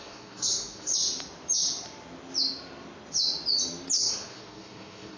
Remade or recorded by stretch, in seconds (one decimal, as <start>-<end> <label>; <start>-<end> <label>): 0.0-0.9 remade; 0.9-4.0 recorded; 4.0-5.2 remade

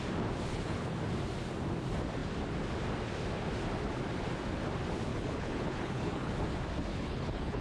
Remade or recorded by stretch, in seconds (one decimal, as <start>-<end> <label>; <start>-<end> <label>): 0.0-0.5 recorded; 0.5-1.0 remade; 1.0-5.1 recorded; 5.1-6.3 remade; 6.3-6.9 recorded; 6.9-7.6 remade

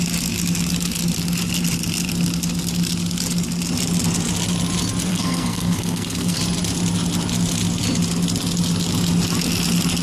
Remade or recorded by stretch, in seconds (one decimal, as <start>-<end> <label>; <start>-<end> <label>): 0.0-5.1 recorded; 5.1-6.4 remade; 6.4-10.0 recorded

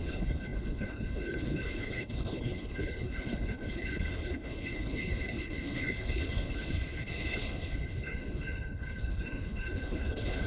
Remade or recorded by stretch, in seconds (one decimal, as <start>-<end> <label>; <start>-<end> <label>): 0.0-10.5 remade

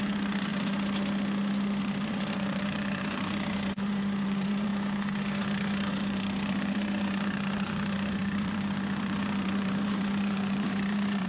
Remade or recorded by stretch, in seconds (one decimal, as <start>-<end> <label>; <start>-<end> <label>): 0.0-0.5 remade; 0.5-1.8 recorded; 1.8-4.7 remade; 4.7-6.0 recorded; 6.0-11.3 remade

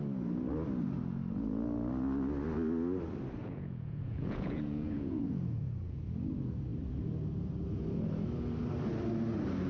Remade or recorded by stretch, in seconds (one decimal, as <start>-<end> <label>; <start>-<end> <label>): 0.0-3.4 recorded; 3.4-6.0 remade; 6.0-9.7 recorded